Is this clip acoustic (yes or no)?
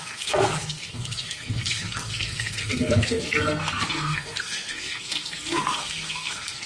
no